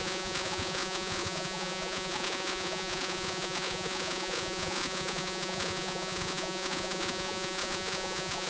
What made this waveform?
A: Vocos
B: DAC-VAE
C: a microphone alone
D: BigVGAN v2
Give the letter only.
A